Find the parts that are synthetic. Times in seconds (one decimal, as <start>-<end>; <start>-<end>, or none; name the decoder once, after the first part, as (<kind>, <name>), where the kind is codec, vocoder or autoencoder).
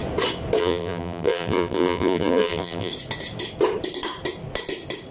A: 0.6-2.9 (vocoder, BigVGAN v2)